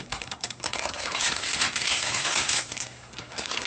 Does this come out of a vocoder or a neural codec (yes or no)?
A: yes